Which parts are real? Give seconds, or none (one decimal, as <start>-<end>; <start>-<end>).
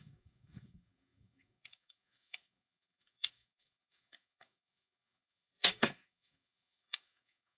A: none